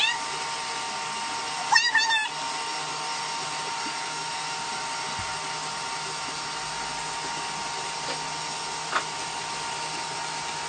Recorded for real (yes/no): yes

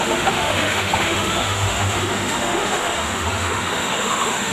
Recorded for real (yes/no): no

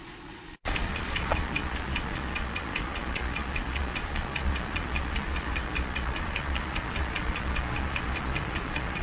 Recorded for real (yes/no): no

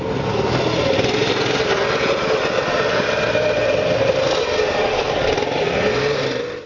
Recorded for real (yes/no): yes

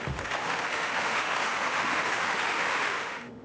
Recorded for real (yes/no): no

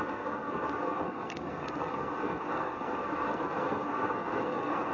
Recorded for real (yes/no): no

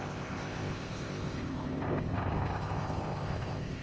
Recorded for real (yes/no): no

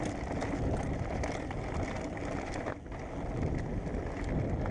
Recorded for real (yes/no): yes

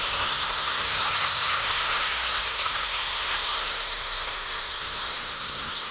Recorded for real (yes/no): no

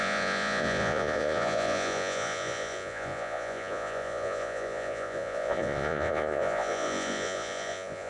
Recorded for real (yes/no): no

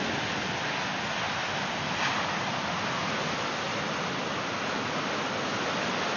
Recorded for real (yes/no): yes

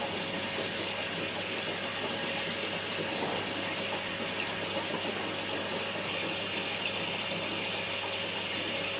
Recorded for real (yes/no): yes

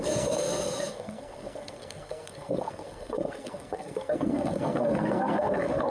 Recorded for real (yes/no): no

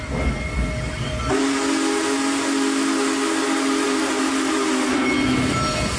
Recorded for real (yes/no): yes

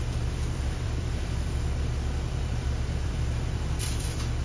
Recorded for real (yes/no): no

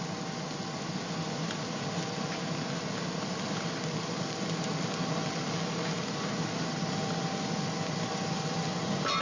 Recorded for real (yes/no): yes